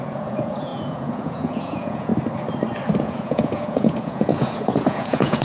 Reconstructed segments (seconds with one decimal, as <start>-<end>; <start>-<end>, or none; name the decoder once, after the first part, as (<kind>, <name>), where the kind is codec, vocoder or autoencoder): 0.0-2.1 (vocoder, Vocos); 3.0-5.4